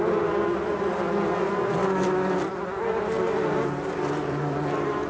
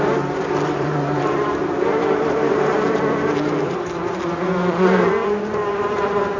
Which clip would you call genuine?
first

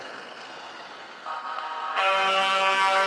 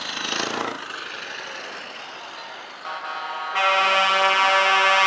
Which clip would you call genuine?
second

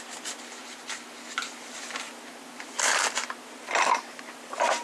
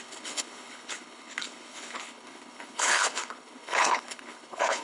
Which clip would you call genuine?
first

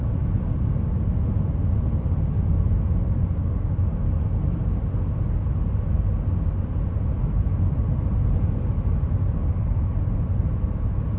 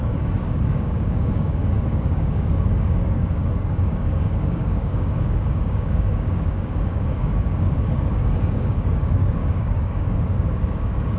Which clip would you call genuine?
first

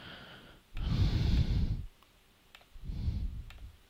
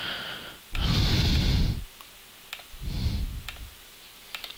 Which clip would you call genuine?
second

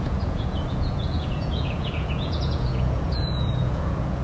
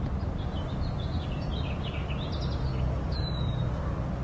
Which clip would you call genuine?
second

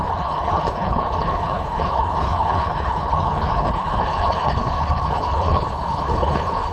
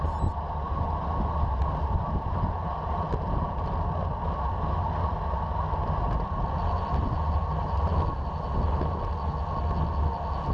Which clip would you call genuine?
second